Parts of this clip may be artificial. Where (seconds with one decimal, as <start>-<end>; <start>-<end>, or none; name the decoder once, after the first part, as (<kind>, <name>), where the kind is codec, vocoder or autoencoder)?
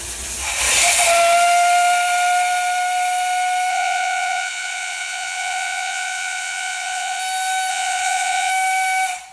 3.7-7.2 (vocoder, Vocos); 7.7-8.5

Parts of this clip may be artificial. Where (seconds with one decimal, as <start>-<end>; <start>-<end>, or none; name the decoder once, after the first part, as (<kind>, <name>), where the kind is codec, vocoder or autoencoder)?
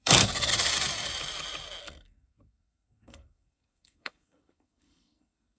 0.0-0.5 (codec, SNAC); 1.8-5.6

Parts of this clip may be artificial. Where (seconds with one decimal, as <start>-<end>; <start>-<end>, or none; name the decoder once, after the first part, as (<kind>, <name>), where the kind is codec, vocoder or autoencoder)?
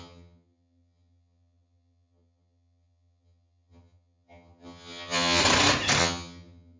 0.0-5.4 (vocoder, HiFi-GAN); 6.0-6.8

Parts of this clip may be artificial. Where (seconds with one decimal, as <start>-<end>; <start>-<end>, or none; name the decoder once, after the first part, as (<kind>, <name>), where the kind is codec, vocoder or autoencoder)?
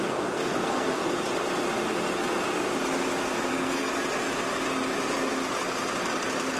0.0-1.0 (codec, SNAC); 3.5-3.9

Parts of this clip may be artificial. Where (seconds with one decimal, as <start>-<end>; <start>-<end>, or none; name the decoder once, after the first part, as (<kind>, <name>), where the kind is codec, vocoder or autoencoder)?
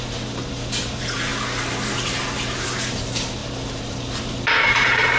0.0-1.3 (vocoder, BigVGAN v2); 1.9-5.2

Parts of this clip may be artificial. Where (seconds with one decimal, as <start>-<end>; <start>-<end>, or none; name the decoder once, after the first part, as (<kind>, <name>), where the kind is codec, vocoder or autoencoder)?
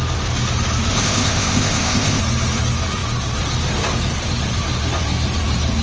0.9-2.2 (codec, ZipCodec)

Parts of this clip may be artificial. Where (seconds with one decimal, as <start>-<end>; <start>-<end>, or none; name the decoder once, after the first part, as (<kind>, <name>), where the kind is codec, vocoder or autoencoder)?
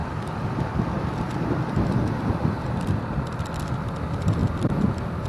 0.0-3.2 (vocoder, BigVGAN v2); 4.4-5.3